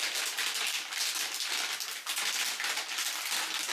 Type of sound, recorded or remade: recorded